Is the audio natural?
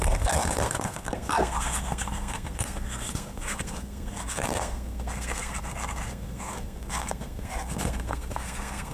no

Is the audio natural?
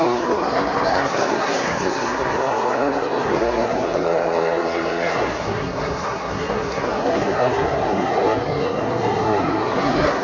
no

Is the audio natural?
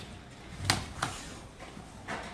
yes